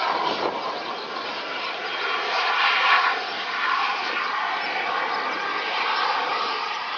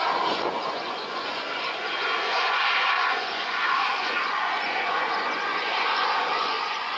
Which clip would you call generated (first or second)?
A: second